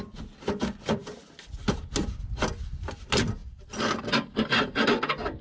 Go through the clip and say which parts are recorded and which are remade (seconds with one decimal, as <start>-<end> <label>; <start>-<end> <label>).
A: 0.0-5.4 recorded